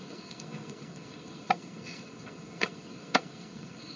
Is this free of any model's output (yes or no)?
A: no